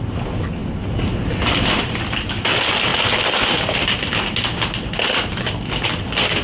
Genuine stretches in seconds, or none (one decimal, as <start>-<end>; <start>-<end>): 0.0-6.4